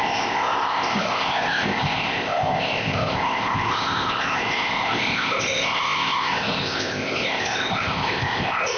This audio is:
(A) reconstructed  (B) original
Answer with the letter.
A